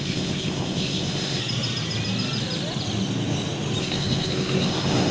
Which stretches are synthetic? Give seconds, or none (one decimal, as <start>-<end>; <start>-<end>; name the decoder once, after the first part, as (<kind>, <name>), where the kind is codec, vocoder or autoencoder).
0.0-1.4 (codec, SNAC); 3.8-5.1